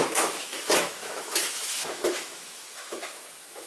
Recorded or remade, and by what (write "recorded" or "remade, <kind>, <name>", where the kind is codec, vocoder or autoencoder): remade, autoencoder, DAC-VAE